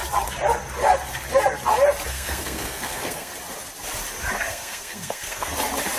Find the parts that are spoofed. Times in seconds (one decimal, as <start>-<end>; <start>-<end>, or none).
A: 2.1-3.3; 4.5-5.5

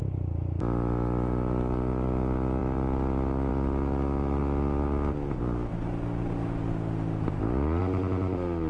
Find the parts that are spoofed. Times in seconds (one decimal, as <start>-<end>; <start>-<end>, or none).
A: none